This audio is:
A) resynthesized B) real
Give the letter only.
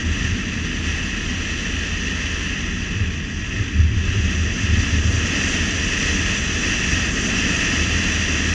B